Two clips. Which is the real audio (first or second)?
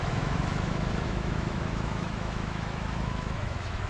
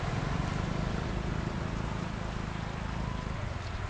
second